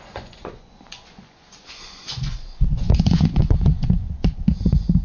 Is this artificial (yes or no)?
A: yes